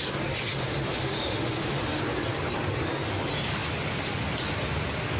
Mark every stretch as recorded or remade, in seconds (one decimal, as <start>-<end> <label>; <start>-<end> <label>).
0.0-0.5 recorded; 0.5-2.0 remade; 2.0-5.2 recorded

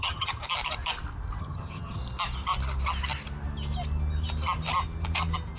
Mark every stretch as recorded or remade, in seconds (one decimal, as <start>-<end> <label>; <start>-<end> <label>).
0.0-0.4 remade; 0.4-1.4 recorded; 1.4-2.0 remade; 2.0-5.6 recorded